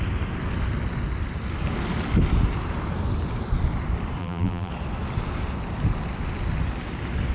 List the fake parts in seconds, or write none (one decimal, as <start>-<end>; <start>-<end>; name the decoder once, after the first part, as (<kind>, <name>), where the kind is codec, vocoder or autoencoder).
4.2-4.7 (vocoder, BigVGAN v2)

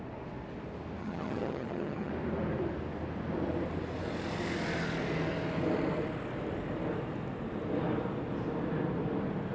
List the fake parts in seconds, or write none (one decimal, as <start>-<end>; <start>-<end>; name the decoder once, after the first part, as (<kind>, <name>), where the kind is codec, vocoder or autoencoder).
1.0-2.1 (vocoder, HiFi-GAN)

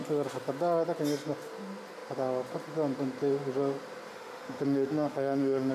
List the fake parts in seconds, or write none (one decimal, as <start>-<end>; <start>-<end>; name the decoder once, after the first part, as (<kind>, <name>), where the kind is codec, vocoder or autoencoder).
4.1-5.7 (autoencoder, DAC-VAE)

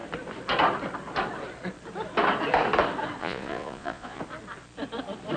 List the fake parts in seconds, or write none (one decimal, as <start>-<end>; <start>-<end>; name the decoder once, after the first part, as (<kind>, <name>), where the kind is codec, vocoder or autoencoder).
3.2-4.2 (vocoder, Vocos)

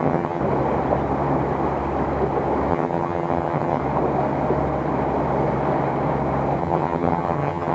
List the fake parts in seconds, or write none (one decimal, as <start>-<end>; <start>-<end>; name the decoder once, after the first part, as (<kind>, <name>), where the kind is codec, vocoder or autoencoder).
0.0-0.4 (vocoder, HiFi-GAN); 2.7-3.8; 6.6-7.7

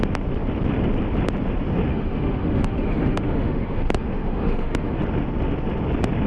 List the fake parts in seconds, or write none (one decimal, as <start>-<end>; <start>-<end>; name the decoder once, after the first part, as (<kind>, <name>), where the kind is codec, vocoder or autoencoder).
1.9-5.0 (autoencoder, DAC-VAE)

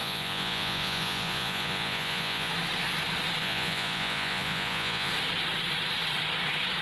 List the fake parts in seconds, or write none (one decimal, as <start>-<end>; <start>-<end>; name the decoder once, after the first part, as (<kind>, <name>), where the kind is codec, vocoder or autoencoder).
0.0-2.5 (vocoder, Vocos); 3.4-5.1